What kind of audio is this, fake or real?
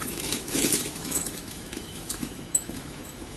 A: fake